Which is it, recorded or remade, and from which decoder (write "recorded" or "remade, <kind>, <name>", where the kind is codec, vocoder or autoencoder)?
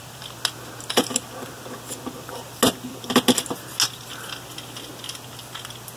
recorded